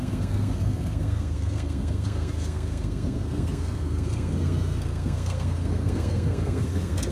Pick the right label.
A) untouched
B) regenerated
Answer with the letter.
B